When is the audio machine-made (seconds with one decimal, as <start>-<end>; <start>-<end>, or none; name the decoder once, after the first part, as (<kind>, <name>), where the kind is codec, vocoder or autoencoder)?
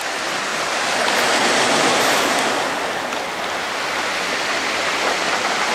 none